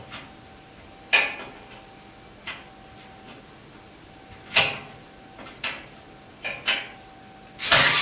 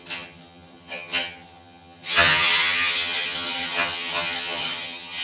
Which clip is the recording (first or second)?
first